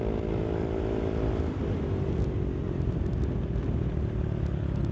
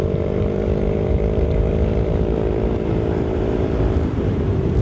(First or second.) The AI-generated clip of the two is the second